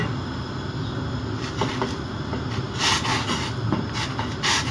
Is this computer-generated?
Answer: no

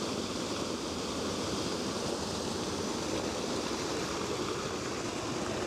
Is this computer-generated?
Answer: no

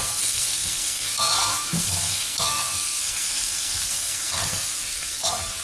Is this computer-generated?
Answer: yes